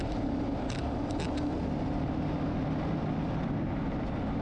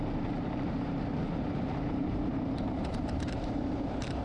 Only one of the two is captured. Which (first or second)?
first